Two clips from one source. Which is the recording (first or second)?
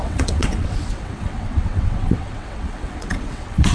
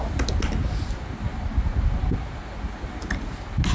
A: second